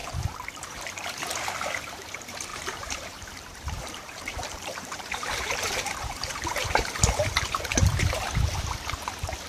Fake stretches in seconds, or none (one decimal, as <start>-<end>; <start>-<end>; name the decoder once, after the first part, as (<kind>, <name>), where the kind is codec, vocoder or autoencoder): 0.0-0.5 (vocoder, BigVGAN v2); 2.5-6.9